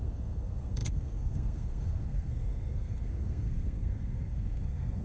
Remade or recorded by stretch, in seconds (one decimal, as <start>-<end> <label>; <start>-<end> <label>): 0.0-5.0 remade